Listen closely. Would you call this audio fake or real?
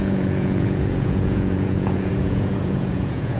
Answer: fake